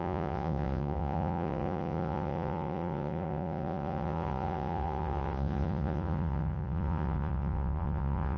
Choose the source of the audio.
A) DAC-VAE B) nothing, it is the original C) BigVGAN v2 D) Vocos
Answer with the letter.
D